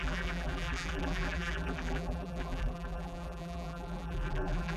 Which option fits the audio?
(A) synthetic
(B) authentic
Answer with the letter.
A